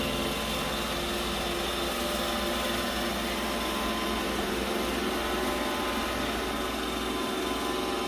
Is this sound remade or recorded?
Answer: recorded